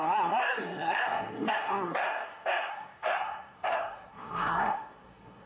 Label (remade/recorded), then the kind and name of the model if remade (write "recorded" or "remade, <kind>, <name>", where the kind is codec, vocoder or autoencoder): remade, codec, SNAC